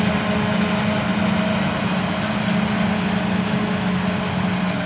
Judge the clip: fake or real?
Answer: real